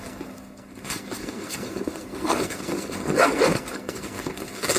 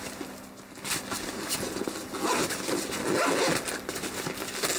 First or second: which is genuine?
second